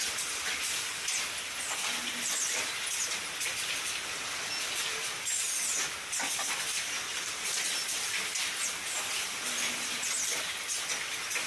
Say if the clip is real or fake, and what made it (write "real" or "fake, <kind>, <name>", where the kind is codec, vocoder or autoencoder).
real